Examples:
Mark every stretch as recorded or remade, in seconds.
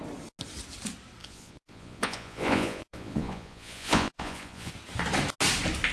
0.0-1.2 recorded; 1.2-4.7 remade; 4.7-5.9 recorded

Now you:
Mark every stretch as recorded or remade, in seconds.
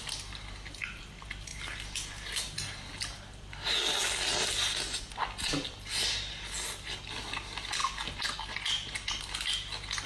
0.0-10.1 recorded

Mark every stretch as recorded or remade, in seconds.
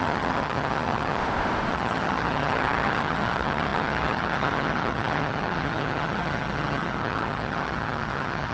0.0-1.2 remade; 1.2-1.7 recorded; 1.7-8.5 remade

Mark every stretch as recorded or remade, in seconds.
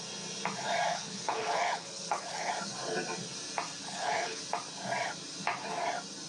0.0-0.9 recorded; 0.9-2.5 remade; 2.5-3.8 recorded; 3.8-4.4 remade; 4.4-6.3 recorded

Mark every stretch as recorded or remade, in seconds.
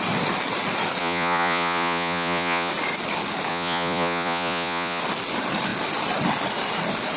0.0-1.0 recorded; 1.0-2.7 remade; 2.7-3.5 recorded; 3.5-5.0 remade; 5.0-7.2 recorded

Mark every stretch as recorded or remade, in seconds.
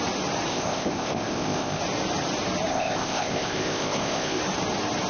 0.0-0.5 recorded; 0.5-1.8 remade; 1.8-2.7 recorded; 2.7-4.4 remade; 4.4-5.1 recorded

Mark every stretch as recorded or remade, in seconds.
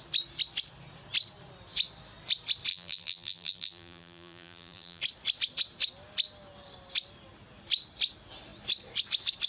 0.0-2.7 recorded; 2.7-5.0 remade; 5.0-9.5 recorded